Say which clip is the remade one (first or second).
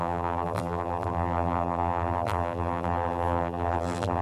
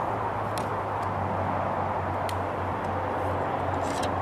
first